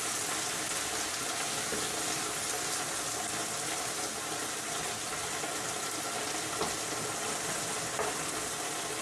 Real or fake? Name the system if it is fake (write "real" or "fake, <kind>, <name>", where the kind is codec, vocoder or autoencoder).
real